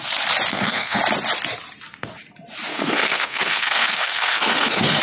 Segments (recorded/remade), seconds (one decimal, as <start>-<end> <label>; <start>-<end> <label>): 0.0-0.5 recorded; 0.5-1.0 remade; 1.0-2.7 recorded; 2.7-5.0 remade